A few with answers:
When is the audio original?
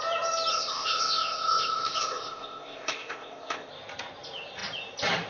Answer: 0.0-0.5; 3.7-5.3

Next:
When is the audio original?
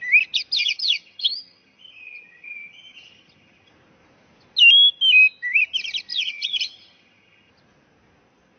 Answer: 0.0-0.6; 3.7-6.1; 7.5-8.6